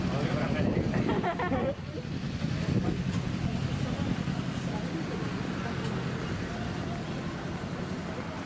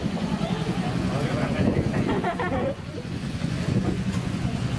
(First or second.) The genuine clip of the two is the first